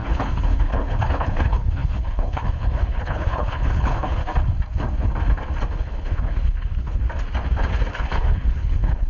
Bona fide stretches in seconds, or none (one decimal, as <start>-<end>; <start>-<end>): 4.2-5.7; 7.0-7.9